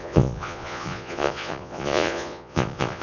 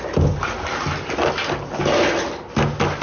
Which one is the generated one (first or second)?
first